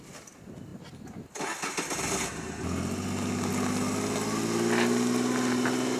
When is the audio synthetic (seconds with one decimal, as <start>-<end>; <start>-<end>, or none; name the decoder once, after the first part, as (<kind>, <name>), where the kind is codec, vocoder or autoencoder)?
none